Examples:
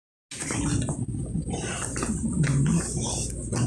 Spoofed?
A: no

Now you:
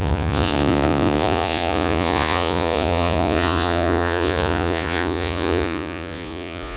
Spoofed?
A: yes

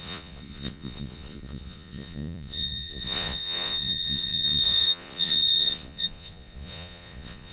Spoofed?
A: yes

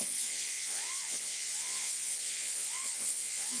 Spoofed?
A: yes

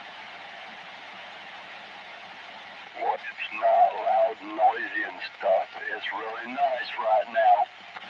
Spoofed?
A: no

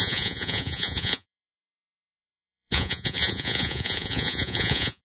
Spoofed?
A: yes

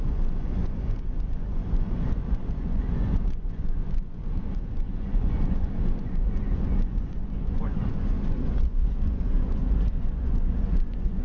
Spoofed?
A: yes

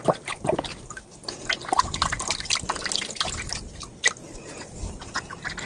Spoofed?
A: no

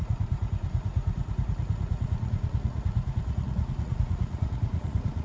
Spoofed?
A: yes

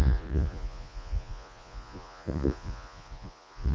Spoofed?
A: yes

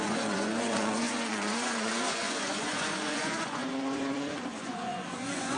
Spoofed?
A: yes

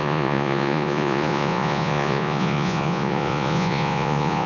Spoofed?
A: yes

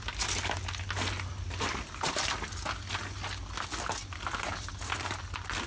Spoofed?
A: no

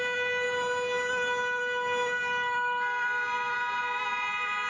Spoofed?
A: no